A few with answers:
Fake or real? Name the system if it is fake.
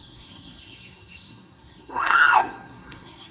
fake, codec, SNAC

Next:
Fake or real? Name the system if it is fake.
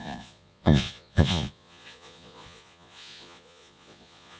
fake, vocoder, Vocos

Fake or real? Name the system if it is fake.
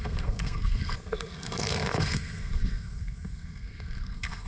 fake, codec, SNAC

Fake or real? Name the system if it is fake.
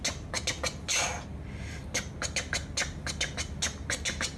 real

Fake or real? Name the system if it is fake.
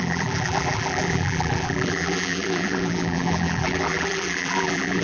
fake, vocoder, BigVGAN v2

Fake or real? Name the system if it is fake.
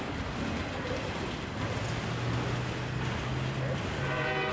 real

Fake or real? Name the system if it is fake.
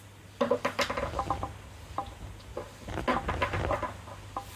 real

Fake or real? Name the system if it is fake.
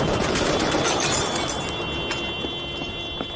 real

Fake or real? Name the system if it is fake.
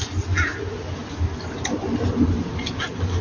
real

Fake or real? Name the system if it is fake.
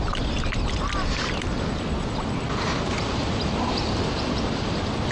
real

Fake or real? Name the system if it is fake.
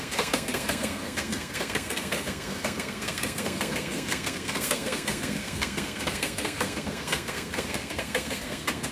fake, codec, SNAC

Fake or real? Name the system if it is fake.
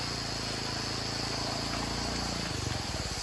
real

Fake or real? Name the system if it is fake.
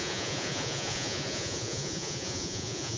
fake, vocoder, Vocos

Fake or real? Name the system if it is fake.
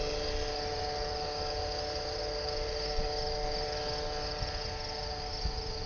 real